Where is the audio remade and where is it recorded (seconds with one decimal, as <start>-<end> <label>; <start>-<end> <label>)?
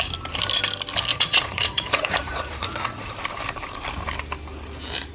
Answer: 0.0-1.1 recorded; 1.1-3.1 remade; 3.1-5.1 recorded